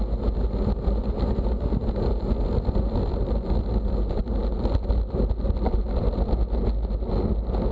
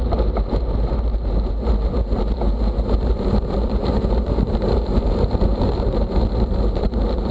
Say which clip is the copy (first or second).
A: second